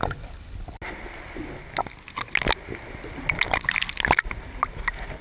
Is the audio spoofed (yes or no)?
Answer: no